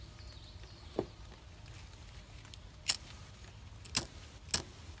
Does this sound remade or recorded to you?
recorded